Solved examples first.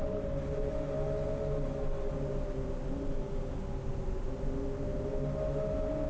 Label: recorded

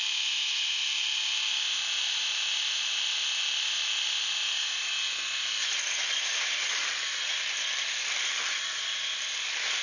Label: recorded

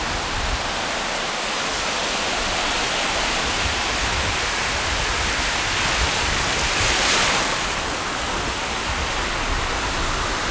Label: recorded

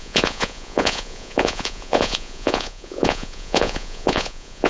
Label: remade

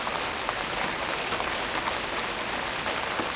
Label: recorded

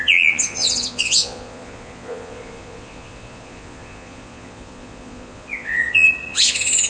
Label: remade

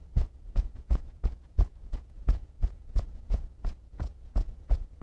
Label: remade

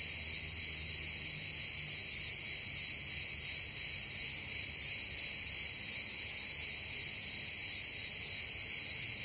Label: recorded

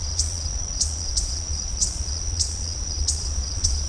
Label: remade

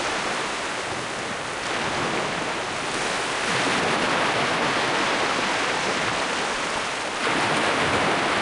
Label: recorded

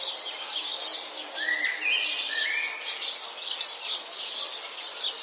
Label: recorded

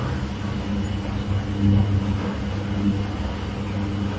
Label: recorded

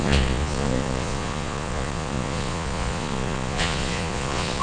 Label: remade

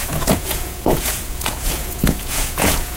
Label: remade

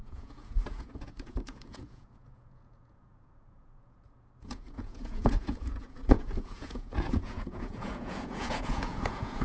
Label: remade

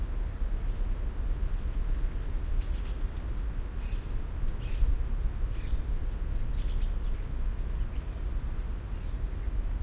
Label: recorded